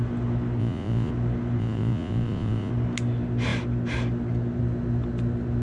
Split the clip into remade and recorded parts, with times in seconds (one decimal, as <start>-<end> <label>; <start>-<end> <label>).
0.0-0.6 recorded; 0.6-1.1 remade; 1.1-1.6 recorded; 1.6-2.7 remade; 2.7-5.6 recorded